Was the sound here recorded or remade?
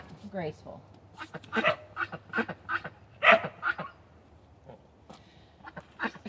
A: recorded